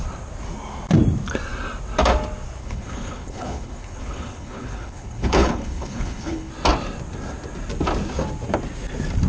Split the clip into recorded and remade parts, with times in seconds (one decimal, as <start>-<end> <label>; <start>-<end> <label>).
0.0-2.6 recorded; 2.6-6.5 remade; 6.5-9.3 recorded